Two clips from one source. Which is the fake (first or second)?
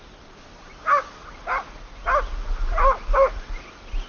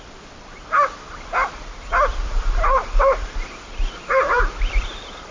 second